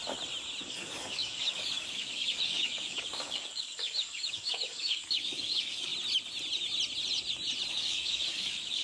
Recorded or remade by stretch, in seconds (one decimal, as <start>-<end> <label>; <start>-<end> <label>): 0.0-0.6 recorded; 0.6-5.9 remade; 5.9-7.7 recorded; 7.7-8.8 remade